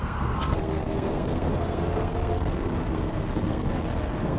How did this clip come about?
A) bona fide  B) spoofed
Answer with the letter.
B